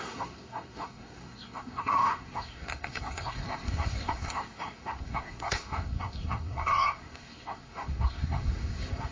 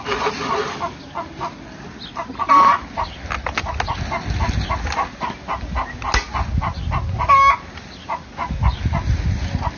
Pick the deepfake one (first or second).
first